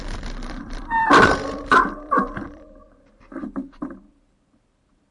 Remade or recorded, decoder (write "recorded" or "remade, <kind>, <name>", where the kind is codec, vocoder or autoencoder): remade, vocoder, BigVGAN v2